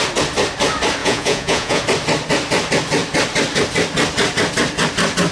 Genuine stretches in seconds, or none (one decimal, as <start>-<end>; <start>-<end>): 0.0-1.0; 1.8-5.3

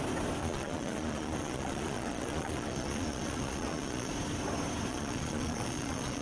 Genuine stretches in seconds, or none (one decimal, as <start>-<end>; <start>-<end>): 0.0-0.4; 4.1-4.9

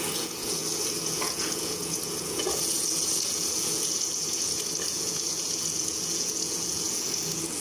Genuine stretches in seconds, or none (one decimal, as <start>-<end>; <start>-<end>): none

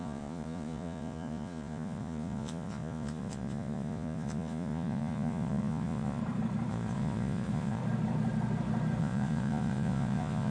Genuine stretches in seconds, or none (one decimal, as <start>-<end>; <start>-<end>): 6.2-6.7; 7.8-9.0

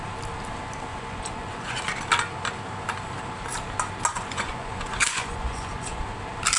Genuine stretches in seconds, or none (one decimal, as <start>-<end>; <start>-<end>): 0.0-0.9; 1.8-4.1; 6.0-6.6

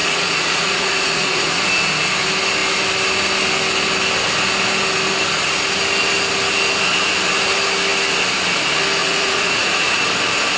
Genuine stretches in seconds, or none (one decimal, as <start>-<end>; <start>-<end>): 1.6-9.0; 10.0-10.6

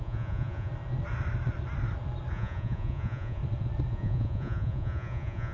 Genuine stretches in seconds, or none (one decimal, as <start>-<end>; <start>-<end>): 0.7-2.3; 3.4-3.9